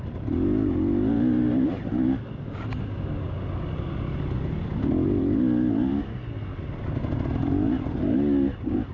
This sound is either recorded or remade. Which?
recorded